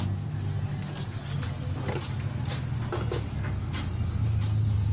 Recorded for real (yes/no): yes